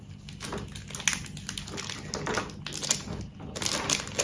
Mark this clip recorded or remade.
recorded